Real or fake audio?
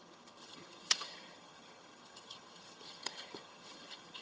fake